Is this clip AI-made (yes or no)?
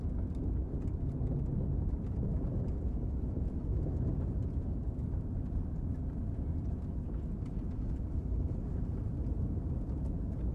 no